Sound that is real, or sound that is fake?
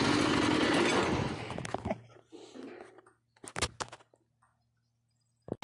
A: real